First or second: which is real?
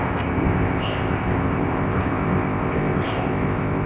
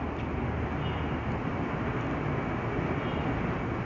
second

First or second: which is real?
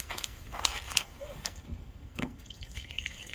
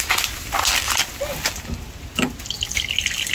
second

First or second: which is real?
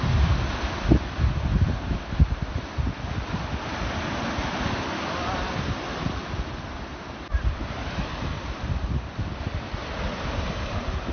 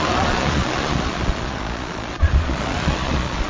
first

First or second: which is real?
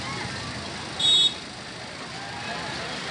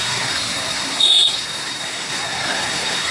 first